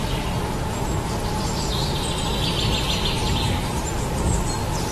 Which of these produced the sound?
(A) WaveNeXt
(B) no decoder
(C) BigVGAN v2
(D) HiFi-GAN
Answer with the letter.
B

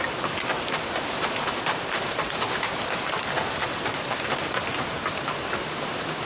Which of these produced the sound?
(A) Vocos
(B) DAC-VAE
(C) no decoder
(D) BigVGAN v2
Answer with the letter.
D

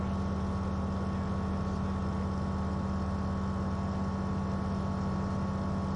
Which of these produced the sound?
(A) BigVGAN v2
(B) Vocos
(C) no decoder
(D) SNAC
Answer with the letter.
C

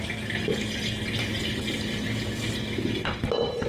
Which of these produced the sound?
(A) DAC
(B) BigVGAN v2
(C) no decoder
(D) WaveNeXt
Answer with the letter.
C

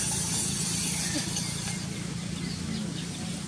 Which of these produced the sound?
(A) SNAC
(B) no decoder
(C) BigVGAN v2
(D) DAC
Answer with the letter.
B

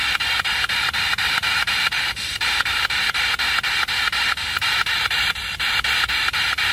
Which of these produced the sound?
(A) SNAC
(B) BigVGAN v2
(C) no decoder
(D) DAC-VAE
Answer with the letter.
B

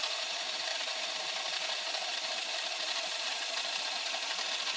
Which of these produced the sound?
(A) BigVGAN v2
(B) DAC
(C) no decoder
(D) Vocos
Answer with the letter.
A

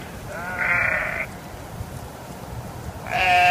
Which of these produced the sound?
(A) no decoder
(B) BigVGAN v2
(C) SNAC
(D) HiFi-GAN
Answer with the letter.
B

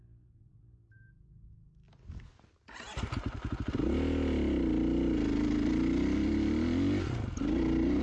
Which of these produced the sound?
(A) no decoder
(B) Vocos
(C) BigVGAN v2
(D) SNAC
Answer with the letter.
A